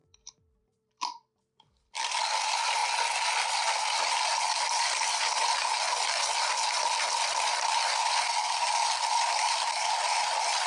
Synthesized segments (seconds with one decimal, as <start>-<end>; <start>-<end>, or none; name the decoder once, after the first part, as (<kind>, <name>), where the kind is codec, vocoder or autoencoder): 0.0-2.8 (vocoder, BigVGAN v2); 7.1-10.7

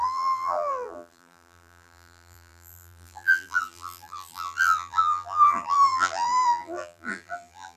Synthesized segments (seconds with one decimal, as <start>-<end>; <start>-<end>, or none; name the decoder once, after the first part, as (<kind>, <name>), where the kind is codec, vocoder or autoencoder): 0.0-7.8 (vocoder, BigVGAN v2)

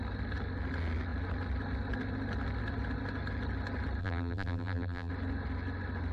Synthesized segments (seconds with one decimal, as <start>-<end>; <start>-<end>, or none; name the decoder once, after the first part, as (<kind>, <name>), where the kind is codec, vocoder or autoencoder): 4.0-5.1 (vocoder, BigVGAN v2)